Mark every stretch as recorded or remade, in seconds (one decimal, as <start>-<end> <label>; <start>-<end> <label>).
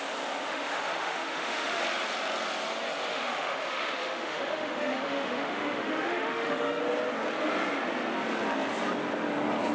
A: 0.0-0.5 recorded; 0.5-1.8 remade; 1.8-3.1 recorded; 3.1-6.8 remade; 6.8-9.7 recorded